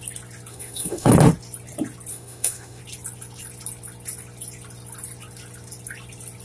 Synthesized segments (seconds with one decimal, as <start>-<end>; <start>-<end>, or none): 0.5-1.1; 2.1-2.8